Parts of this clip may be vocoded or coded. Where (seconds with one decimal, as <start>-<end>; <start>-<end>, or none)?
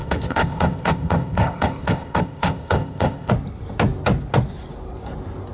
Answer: 0.0-3.3